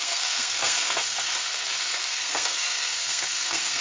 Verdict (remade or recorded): remade